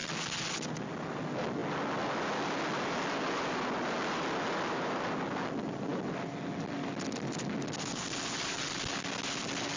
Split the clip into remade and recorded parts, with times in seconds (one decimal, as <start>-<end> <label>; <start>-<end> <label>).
0.0-9.8 recorded